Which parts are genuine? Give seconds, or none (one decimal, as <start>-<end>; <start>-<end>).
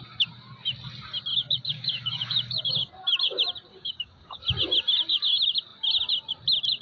0.0-1.3; 2.9-3.7; 4.4-6.8